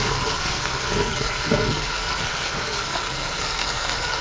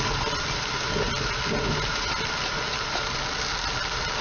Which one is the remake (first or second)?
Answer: first